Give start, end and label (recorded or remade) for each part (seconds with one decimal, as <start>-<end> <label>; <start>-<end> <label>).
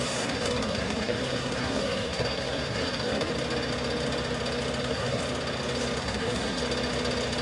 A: 0.0-3.3 remade; 3.3-4.8 recorded; 4.8-5.2 remade; 5.2-6.0 recorded; 6.0-6.6 remade; 6.6-7.4 recorded